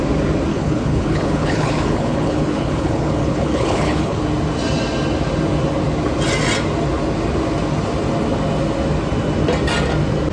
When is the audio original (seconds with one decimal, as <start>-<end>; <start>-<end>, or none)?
0.0-0.5; 4.2-10.3